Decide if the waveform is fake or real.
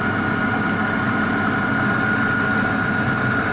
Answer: real